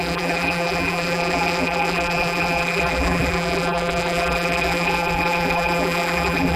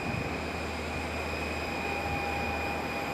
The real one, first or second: second